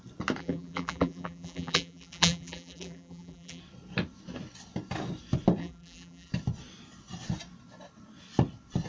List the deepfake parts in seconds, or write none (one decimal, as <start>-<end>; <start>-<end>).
0.4-3.6; 5.6-6.3